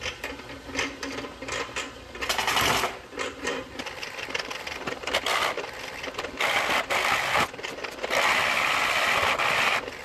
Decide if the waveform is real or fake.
real